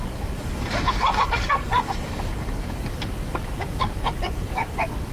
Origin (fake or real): fake